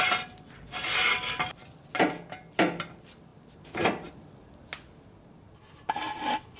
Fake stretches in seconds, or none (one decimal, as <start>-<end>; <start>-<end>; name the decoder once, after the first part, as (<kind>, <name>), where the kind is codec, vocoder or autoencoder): none